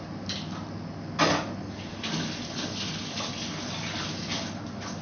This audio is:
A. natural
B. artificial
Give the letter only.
A